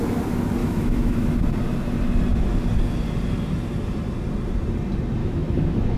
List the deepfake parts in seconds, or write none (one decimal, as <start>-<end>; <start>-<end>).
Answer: 0.6-1.4; 5.2-6.0